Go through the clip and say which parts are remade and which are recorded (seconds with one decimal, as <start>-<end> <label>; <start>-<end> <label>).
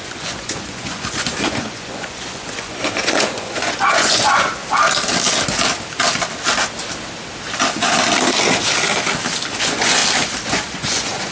0.0-4.6 remade; 4.6-9.6 recorded; 9.6-10.0 remade; 10.0-10.5 recorded; 10.5-11.3 remade